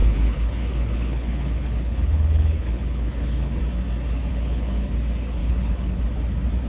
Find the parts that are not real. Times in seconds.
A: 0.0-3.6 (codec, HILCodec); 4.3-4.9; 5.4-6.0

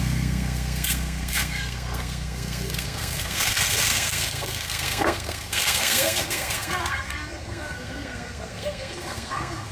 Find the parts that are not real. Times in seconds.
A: 0.0-9.7 (codec, SNAC)